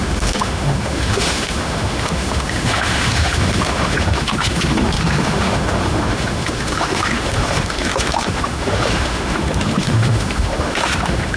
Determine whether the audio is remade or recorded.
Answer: remade